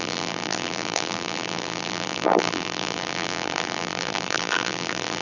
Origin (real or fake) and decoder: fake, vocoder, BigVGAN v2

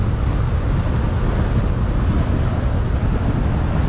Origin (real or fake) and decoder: real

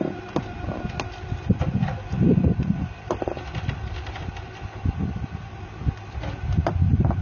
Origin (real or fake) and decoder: real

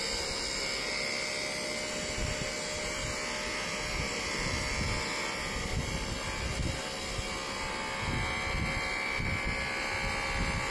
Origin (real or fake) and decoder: real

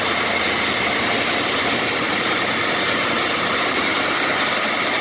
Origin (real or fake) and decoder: fake, vocoder, BigVGAN v2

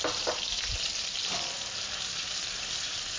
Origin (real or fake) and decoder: fake, vocoder, BigVGAN v2